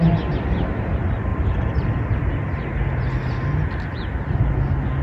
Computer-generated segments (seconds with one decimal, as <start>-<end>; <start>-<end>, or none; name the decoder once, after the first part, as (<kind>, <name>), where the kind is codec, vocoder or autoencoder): none